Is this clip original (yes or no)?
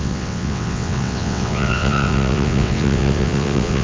no